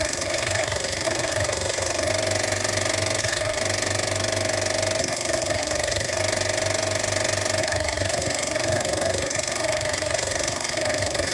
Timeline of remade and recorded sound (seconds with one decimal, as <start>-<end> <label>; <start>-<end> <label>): 0.0-2.1 remade; 2.1-3.2 recorded; 3.2-3.6 remade; 3.6-5.0 recorded; 5.0-6.2 remade; 6.2-7.6 recorded; 7.6-11.3 remade